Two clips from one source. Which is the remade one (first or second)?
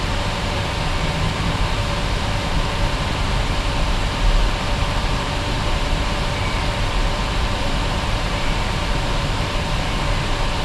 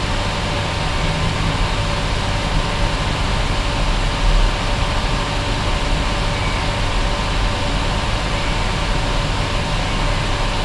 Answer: first